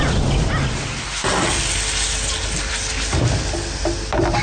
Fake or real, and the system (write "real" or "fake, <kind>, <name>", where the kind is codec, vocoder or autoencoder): real